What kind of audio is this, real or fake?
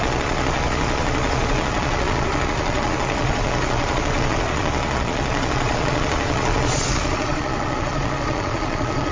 fake